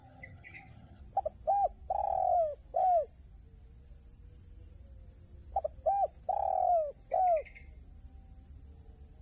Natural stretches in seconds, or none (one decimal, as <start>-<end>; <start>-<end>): 1.0-9.2